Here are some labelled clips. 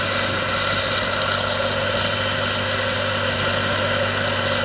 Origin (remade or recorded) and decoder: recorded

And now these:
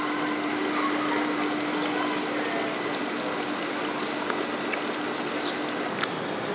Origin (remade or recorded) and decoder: recorded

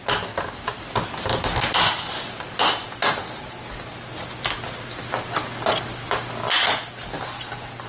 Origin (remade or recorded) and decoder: recorded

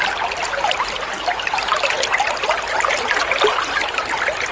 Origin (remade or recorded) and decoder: recorded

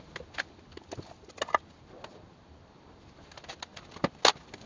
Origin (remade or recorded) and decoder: recorded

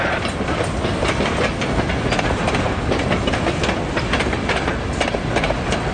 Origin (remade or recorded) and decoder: recorded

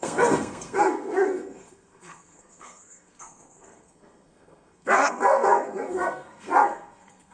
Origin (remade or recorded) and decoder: remade, codec, SNAC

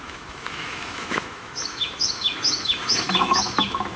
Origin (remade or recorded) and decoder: remade, autoencoder, DAC-VAE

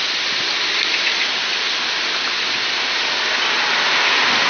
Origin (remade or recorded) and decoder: recorded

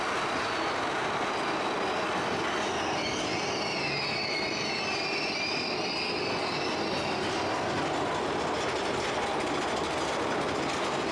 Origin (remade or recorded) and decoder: recorded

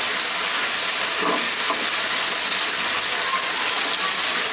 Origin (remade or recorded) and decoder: recorded